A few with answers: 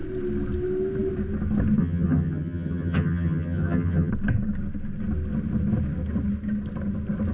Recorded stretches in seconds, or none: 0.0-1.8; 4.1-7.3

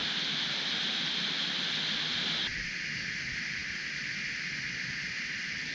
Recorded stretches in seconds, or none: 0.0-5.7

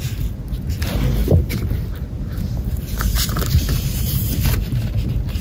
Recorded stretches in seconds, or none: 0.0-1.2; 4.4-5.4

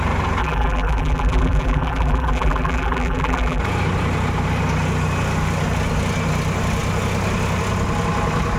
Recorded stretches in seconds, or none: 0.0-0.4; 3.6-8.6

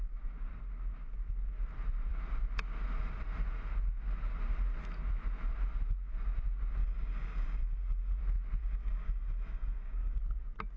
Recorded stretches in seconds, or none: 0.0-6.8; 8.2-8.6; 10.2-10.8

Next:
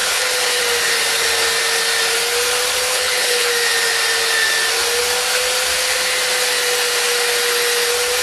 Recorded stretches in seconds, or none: 0.6-2.9; 3.5-8.2